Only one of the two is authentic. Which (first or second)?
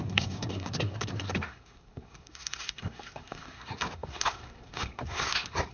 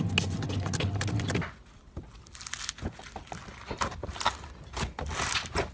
second